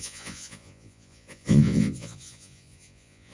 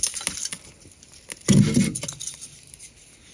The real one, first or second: second